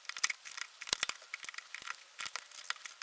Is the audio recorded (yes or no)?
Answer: yes